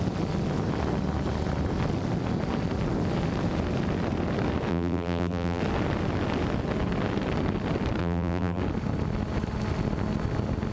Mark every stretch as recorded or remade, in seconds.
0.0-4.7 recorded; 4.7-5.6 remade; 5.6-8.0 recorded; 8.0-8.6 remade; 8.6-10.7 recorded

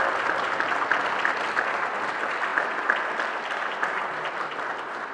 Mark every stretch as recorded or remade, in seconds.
0.0-5.1 recorded

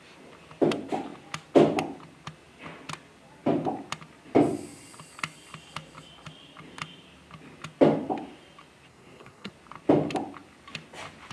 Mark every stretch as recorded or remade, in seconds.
0.0-8.9 recorded; 8.9-9.5 remade; 9.5-11.3 recorded